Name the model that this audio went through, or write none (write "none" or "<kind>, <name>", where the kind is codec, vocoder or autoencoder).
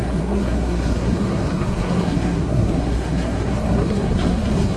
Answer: codec, SNAC